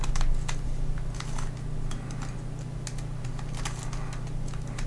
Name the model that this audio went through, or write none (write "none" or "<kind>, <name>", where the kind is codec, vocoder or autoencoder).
none